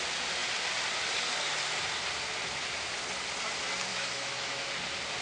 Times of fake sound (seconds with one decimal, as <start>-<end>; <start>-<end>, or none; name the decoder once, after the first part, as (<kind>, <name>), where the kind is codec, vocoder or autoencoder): 3.9-4.7 (autoencoder, DAC-VAE)